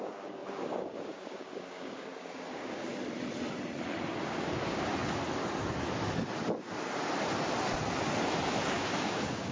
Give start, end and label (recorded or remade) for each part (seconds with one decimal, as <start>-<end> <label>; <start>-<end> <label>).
0.0-2.9 remade; 2.9-4.2 recorded; 4.2-4.9 remade; 4.9-8.7 recorded; 8.7-9.5 remade